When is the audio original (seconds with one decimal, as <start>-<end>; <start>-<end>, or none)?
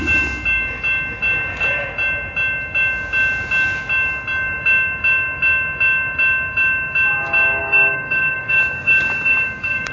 0.0-7.6